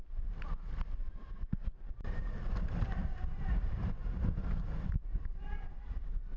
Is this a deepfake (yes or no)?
yes